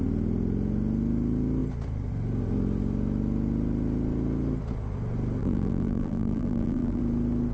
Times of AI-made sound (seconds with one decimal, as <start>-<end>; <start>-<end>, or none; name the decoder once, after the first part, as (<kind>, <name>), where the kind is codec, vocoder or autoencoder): 5.4-7.0 (vocoder, BigVGAN v2)